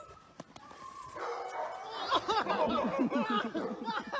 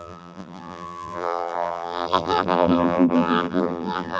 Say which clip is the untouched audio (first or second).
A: first